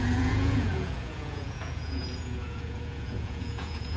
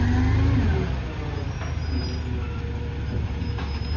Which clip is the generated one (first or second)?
first